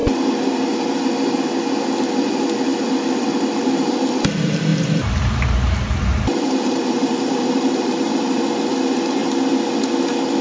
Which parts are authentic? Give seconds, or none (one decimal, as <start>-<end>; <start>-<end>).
0.0-4.7; 8.4-10.4